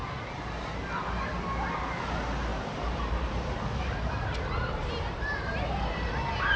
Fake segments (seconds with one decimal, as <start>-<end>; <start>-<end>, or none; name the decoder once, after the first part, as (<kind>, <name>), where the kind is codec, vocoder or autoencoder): 2.5-6.1 (vocoder, BigVGAN v2)